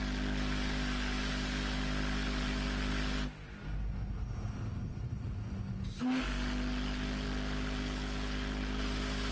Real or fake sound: real